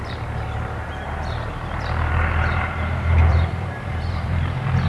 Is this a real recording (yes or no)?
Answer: no